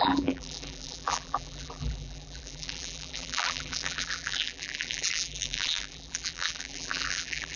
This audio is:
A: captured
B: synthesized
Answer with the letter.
B